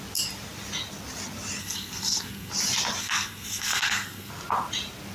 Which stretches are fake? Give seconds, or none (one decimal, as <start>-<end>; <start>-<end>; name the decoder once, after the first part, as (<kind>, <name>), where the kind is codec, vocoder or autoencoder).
1.6-2.5 (codec, SNAC); 3.0-4.3